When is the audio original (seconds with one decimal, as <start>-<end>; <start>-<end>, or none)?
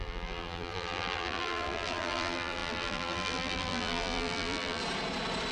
4.8-5.5